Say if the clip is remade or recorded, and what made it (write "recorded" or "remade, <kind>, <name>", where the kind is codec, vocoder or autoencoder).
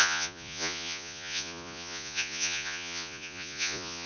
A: remade, vocoder, Vocos